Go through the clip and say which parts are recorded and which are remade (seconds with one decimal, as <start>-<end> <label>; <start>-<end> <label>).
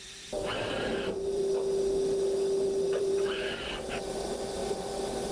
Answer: 0.0-1.4 remade; 1.4-3.0 recorded; 3.0-5.3 remade